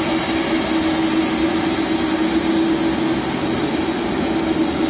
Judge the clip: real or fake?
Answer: real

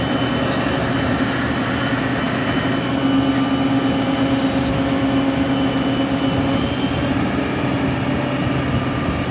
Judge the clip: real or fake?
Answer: real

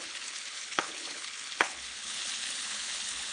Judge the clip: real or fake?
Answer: fake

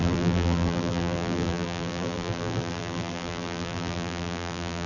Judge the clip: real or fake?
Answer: fake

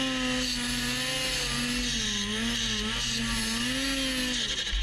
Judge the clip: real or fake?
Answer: real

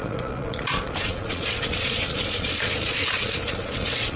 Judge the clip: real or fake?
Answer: fake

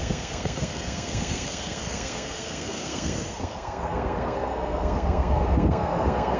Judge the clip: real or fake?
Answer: fake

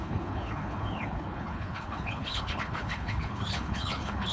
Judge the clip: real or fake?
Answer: fake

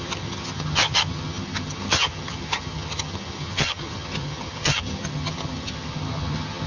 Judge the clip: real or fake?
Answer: fake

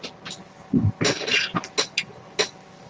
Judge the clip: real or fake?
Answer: real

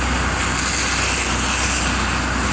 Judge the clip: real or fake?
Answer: real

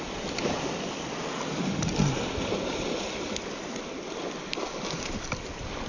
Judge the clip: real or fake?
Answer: real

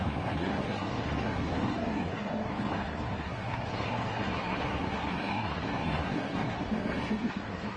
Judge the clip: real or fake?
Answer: fake